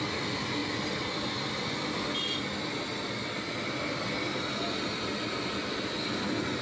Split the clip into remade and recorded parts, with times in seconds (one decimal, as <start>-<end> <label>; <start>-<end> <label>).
0.0-0.6 recorded; 0.6-2.4 remade; 2.4-6.6 recorded